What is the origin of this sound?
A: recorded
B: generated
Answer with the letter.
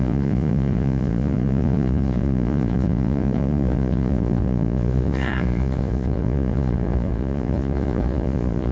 B